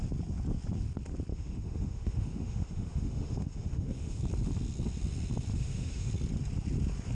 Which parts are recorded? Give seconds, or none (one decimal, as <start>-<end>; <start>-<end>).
0.0-1.3; 4.2-5.5; 6.1-7.1